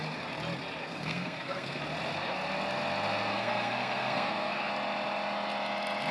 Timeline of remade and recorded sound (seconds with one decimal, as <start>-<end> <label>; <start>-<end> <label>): 0.0-0.8 recorded; 0.8-1.8 remade; 1.8-3.3 recorded; 3.3-4.7 remade; 4.7-6.1 recorded